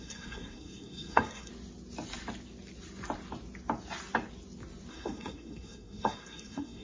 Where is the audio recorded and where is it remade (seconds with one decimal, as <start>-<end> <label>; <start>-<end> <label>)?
0.0-1.5 remade; 1.5-4.9 recorded; 4.9-6.8 remade